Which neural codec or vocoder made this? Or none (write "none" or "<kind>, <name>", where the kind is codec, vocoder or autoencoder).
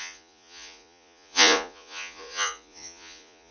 vocoder, Vocos